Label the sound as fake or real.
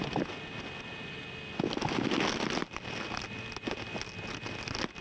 real